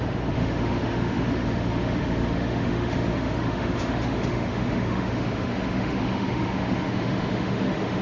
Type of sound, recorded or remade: remade